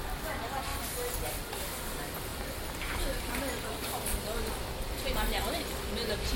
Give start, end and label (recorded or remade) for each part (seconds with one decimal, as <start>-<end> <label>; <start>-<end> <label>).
0.0-0.7 recorded; 0.7-1.3 remade; 1.3-6.4 recorded